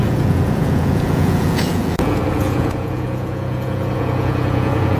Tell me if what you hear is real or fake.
fake